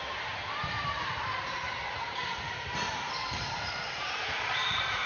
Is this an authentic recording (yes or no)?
no